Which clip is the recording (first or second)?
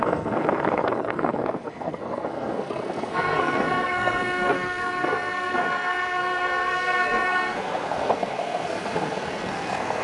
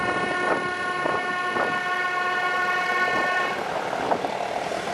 second